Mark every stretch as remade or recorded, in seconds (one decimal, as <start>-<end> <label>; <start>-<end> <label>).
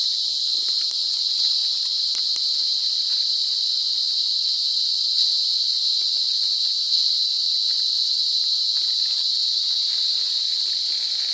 0.0-1.6 remade; 1.6-2.9 recorded; 2.9-9.4 remade; 9.4-10.1 recorded; 10.1-11.3 remade